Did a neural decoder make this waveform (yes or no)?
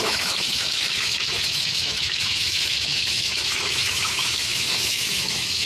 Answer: yes